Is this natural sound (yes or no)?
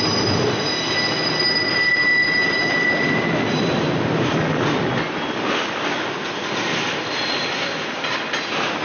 yes